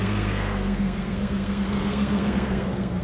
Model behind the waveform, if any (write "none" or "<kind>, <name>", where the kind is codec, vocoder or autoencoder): codec, SNAC